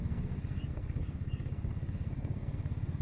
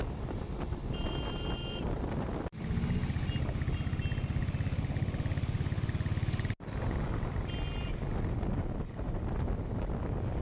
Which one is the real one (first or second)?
second